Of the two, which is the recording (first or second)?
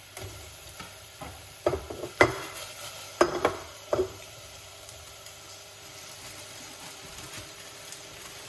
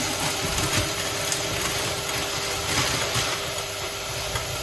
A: second